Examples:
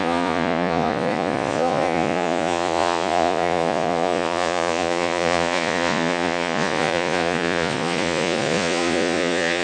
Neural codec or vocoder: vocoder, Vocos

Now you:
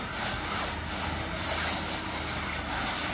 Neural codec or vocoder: none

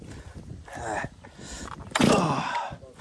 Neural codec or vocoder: none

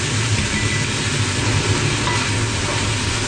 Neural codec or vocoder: none